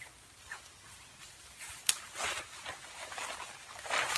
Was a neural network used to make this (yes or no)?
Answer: no